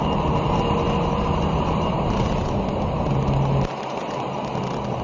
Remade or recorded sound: recorded